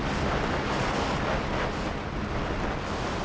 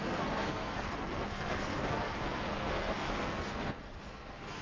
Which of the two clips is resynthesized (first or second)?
second